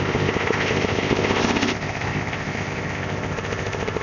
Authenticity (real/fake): fake